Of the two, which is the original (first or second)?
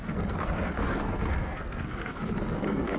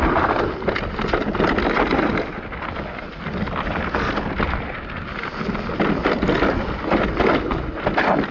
second